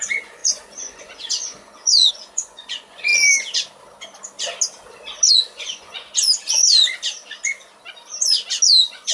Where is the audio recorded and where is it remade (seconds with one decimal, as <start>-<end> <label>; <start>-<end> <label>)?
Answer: 0.0-3.1 remade; 3.1-5.3 recorded; 5.3-6.1 remade; 6.1-8.7 recorded; 8.7-9.1 remade